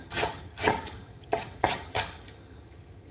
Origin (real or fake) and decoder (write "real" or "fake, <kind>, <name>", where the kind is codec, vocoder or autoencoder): fake, vocoder, HiFi-GAN